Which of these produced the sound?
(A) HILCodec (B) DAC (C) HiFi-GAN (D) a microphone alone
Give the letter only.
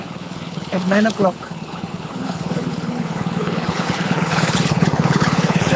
A